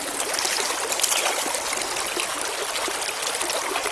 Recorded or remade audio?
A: recorded